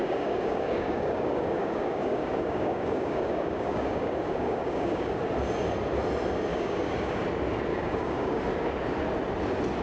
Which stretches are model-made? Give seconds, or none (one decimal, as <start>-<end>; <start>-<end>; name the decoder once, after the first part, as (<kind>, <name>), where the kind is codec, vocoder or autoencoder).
0.0-5.2 (codec, DAC); 6.5-7.2; 7.7-8.4